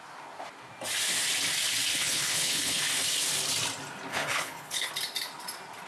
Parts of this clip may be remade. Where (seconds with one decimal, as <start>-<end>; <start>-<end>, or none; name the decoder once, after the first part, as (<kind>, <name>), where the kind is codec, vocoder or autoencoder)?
1.9-2.8 (codec, HILCodec); 4.1-4.9